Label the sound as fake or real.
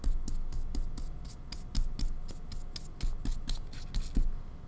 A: real